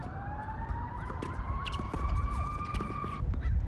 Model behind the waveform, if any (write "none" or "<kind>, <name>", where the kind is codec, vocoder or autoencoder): none